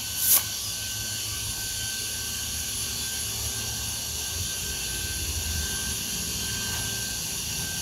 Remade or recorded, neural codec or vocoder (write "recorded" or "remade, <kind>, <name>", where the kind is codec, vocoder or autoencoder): recorded